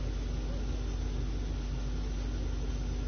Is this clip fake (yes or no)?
no